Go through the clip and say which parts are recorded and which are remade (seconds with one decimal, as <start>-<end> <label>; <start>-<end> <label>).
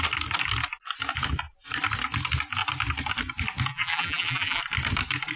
0.0-3.7 recorded; 3.7-4.6 remade; 4.6-5.4 recorded